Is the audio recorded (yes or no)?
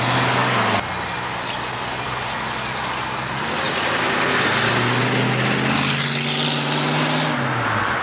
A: yes